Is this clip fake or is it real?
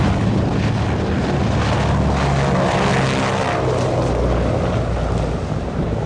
real